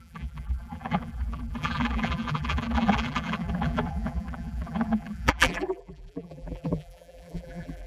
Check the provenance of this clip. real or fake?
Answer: fake